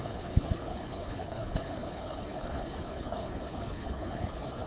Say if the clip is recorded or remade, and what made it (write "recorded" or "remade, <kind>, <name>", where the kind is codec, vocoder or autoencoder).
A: remade, codec, HILCodec